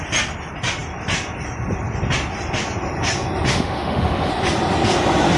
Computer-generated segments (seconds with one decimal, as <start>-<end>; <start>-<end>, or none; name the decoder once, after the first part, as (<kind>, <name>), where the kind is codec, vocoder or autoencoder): 3.5-4.3 (autoencoder, DAC-VAE)